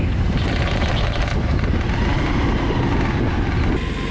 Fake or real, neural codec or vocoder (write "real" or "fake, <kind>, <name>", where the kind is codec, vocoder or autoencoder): real